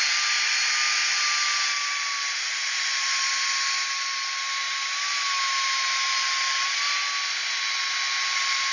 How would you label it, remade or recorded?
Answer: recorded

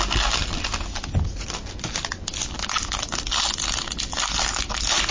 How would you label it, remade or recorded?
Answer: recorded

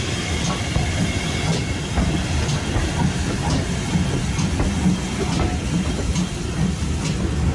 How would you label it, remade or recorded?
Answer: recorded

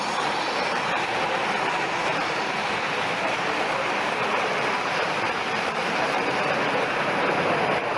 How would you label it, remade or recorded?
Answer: remade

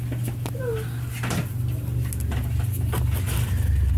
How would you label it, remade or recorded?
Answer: recorded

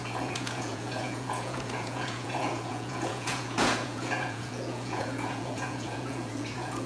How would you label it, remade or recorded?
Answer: remade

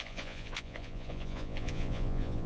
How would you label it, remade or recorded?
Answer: remade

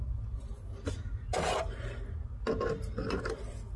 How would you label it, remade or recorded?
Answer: recorded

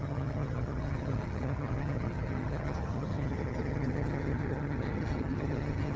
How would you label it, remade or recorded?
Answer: remade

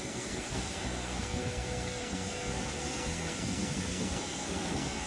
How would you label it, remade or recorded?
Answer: remade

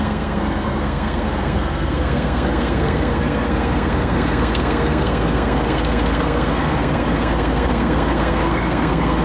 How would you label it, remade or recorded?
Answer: remade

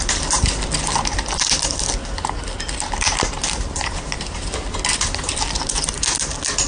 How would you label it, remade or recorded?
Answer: recorded